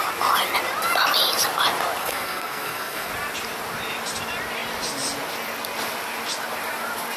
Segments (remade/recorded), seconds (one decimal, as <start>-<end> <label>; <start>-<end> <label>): 0.0-2.0 recorded; 2.0-3.1 remade; 3.1-7.2 recorded

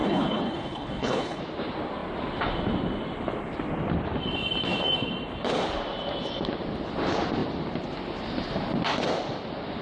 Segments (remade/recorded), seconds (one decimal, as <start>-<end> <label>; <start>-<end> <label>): 0.0-1.4 remade; 1.4-9.8 recorded

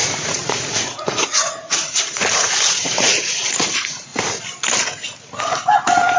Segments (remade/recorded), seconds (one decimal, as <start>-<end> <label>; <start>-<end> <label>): 0.0-4.1 remade; 4.1-6.2 recorded

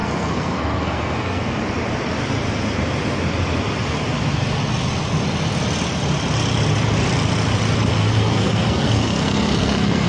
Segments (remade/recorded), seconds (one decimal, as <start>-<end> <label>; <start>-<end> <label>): 0.0-1.5 remade; 1.5-8.0 recorded; 8.0-10.1 remade

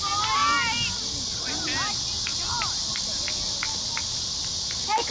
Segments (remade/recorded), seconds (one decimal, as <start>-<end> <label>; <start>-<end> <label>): 0.0-5.1 recorded

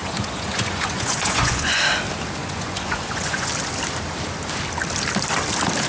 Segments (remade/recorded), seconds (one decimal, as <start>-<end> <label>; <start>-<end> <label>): 0.0-1.8 remade; 1.8-2.4 recorded; 2.4-3.5 remade; 3.5-5.9 recorded